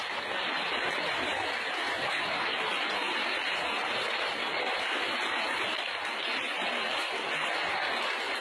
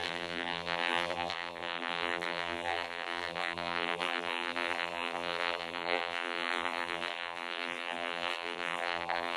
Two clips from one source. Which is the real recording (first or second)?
first